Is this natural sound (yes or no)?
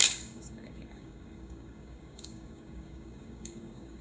no